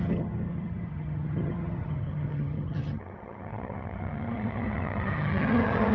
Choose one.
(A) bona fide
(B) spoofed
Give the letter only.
B